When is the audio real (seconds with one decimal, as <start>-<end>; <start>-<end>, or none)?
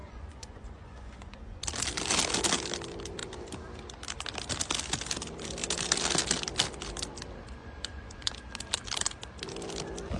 1.6-7.6; 8.3-10.2